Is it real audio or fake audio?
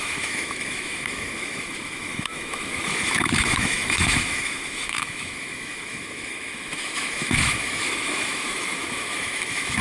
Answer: fake